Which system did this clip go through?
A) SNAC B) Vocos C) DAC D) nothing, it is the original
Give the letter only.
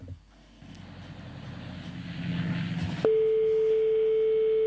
D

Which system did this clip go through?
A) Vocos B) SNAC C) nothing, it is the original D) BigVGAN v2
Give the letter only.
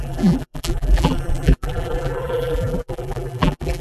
D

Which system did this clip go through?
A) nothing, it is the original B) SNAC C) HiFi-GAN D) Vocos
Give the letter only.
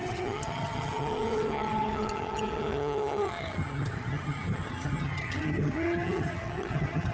C